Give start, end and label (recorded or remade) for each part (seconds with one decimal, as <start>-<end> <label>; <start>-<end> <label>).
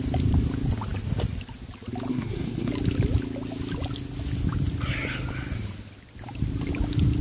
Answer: 0.0-2.1 recorded; 2.1-2.7 remade; 2.7-7.2 recorded